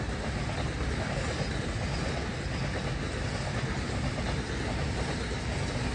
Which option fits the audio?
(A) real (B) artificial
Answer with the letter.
A